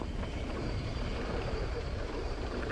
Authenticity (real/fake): fake